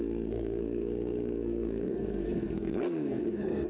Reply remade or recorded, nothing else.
remade